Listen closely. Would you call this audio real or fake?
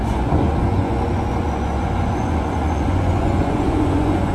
fake